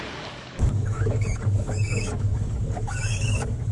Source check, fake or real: fake